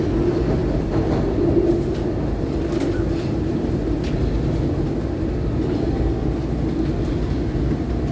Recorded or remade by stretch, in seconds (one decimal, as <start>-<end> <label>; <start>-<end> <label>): 0.0-8.1 recorded